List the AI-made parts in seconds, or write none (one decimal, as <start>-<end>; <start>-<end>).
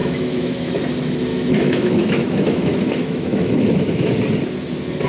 0.0-0.7; 1.3-4.1